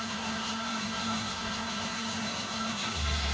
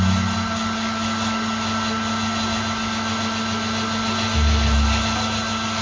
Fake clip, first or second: first